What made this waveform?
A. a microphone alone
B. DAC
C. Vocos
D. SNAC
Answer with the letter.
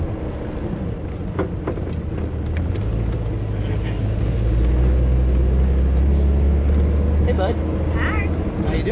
A